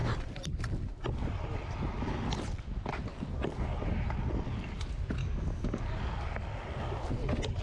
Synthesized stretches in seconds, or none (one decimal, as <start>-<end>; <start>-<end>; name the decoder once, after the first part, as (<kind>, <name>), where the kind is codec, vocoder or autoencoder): 5.2-5.8 (codec, DAC)